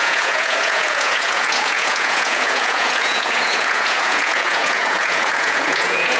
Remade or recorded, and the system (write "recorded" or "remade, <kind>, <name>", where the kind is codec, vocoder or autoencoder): remade, vocoder, Vocos